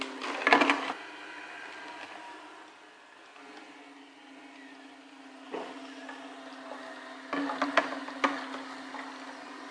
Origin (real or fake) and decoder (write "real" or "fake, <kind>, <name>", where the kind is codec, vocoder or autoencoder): real